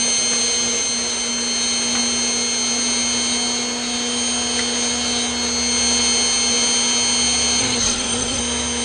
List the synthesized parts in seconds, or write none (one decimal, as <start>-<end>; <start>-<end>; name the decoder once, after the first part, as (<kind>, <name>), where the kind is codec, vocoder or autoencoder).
7.6-8.4 (codec, SNAC)